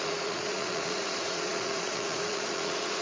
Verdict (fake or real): fake